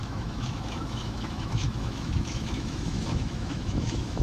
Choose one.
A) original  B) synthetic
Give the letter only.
B